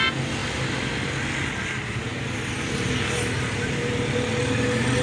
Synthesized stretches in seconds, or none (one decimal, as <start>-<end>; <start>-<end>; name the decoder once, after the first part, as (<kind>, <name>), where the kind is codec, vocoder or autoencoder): none